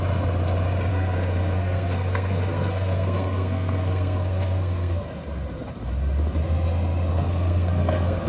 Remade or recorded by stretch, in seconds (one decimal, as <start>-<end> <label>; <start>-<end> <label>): 0.0-0.9 recorded; 0.9-5.0 remade; 5.0-7.1 recorded; 7.1-8.3 remade